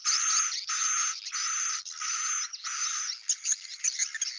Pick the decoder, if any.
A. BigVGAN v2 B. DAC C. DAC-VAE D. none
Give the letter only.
D